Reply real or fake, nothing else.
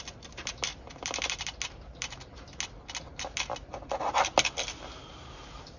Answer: real